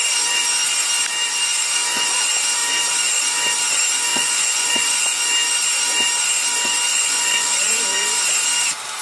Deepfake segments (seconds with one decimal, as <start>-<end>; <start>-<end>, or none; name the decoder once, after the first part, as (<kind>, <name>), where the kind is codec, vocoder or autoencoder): 4.1-5.2 (vocoder, Vocos); 6.9-7.6